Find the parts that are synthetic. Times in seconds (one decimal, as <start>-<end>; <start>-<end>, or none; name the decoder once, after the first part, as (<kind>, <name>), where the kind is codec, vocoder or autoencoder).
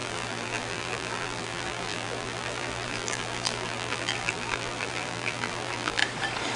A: 0.0-6.0 (vocoder, BigVGAN v2)